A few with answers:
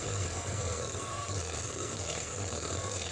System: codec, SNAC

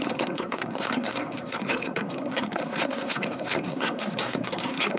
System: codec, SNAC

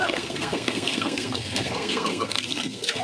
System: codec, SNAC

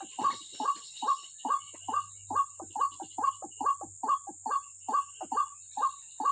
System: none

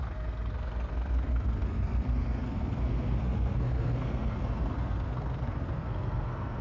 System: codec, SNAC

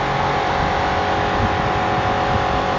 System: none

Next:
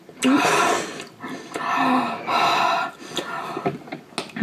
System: none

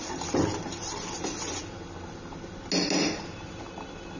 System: none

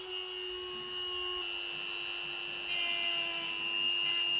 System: none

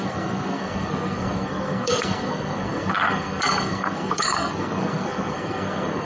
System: codec, SNAC